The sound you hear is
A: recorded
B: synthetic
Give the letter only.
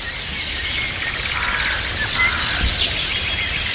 A